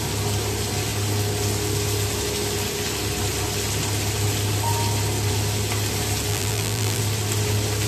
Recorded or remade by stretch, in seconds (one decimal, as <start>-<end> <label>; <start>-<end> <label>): 0.0-6.3 recorded; 6.3-7.0 remade; 7.0-7.9 recorded